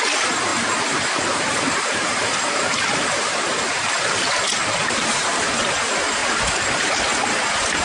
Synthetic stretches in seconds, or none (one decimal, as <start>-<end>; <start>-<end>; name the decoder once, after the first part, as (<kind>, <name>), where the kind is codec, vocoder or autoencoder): 0.5-4.3 (vocoder, BigVGAN v2); 4.8-5.4; 6.2-7.0